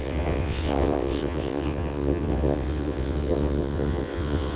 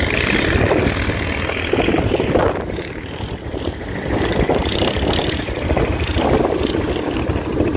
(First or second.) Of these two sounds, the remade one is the first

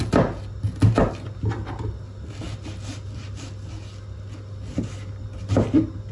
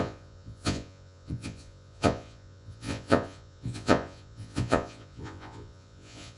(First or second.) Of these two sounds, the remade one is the second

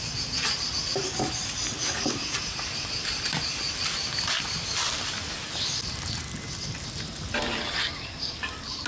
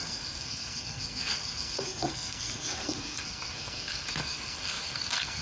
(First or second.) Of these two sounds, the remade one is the second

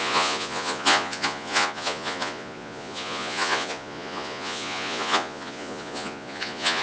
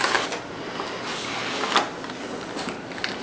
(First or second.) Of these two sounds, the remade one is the first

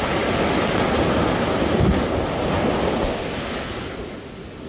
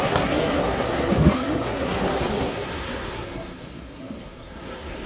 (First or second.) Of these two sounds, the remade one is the second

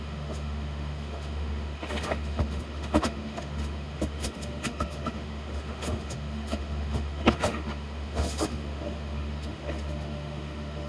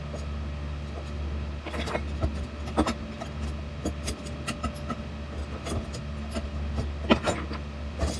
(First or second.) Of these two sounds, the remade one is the first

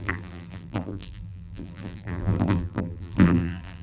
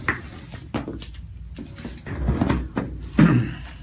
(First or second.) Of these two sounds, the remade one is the first